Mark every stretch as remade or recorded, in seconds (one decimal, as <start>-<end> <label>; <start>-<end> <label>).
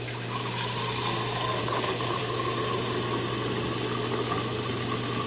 0.0-1.6 recorded; 1.6-2.2 remade; 2.2-5.3 recorded